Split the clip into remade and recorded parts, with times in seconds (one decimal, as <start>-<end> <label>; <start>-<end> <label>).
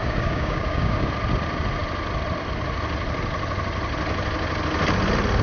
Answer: 0.0-1.1 remade; 1.1-5.4 recorded